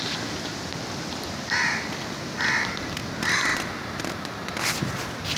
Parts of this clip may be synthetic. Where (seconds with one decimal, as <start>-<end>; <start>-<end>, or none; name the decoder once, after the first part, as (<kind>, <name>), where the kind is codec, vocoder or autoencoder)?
none